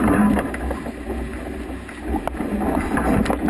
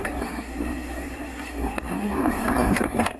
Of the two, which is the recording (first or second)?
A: first